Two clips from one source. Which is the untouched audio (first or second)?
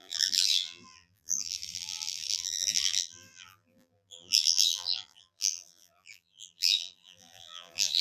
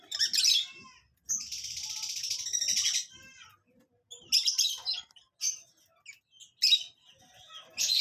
second